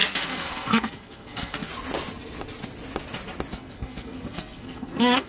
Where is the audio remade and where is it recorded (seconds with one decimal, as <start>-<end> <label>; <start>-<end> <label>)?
0.0-1.7 remade; 1.7-3.5 recorded; 3.5-5.3 remade